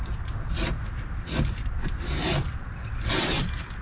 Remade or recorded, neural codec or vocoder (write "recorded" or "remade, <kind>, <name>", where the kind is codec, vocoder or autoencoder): recorded